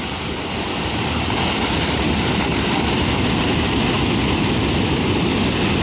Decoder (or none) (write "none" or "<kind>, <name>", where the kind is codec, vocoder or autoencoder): none